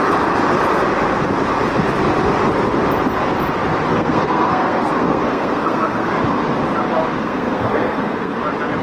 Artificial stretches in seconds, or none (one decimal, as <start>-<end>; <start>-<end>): 3.9-6.1; 7.2-8.4